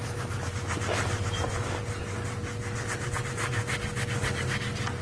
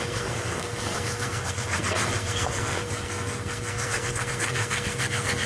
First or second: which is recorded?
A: first